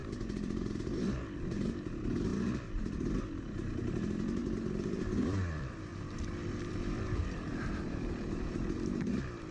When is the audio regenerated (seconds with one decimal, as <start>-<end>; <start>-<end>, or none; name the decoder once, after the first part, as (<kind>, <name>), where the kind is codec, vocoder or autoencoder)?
0.0-5.9 (vocoder, BigVGAN v2); 6.6-9.5